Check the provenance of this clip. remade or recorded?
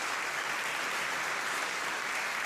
recorded